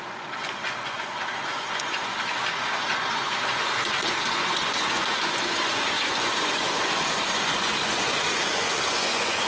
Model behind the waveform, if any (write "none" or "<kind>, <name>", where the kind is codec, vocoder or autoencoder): vocoder, Vocos